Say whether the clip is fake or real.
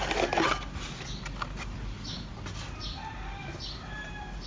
real